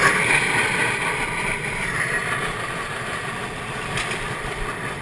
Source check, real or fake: fake